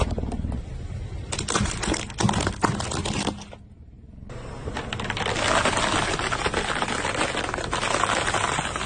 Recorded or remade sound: recorded